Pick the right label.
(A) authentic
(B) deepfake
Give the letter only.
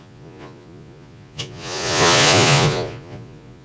B